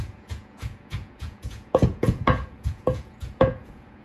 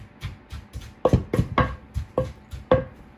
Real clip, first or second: second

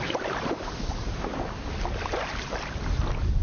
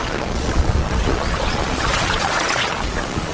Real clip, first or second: first